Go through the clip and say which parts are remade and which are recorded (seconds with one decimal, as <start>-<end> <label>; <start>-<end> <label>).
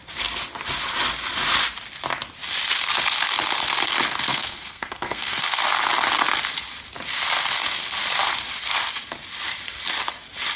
0.0-4.3 recorded; 4.3-5.6 remade; 5.6-10.6 recorded